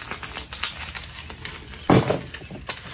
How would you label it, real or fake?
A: real